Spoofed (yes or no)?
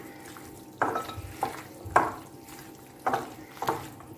no